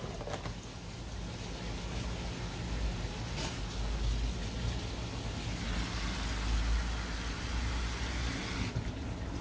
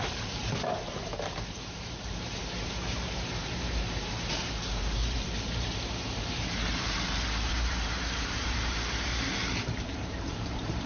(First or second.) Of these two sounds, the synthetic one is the second